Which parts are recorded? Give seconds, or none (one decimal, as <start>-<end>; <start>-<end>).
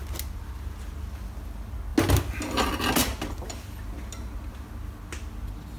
0.0-5.8